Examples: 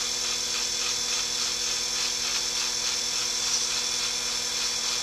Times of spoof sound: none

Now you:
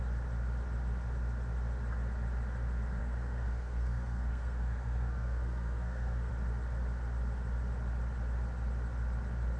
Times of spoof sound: 3.0-6.3 (codec, SNAC)

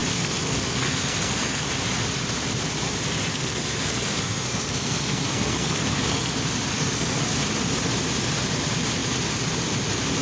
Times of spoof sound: 0.0-1.7 (codec, SNAC); 3.3-6.3; 6.7-7.2